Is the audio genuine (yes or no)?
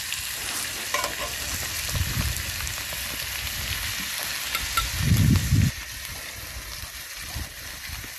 yes